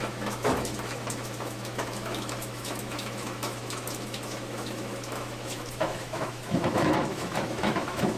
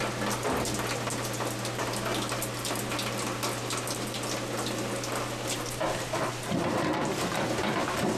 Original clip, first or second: second